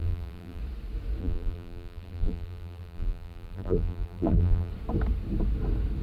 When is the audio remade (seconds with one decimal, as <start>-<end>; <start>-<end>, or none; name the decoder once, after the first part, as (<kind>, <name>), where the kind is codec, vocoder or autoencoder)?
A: 0.0-0.6 (vocoder, BigVGAN v2); 1.2-4.7